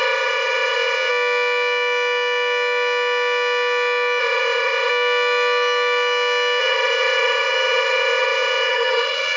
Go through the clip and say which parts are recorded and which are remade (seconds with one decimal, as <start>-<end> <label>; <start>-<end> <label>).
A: 0.0-1.1 remade; 1.1-4.2 recorded; 4.2-4.9 remade; 4.9-6.6 recorded; 6.6-9.4 remade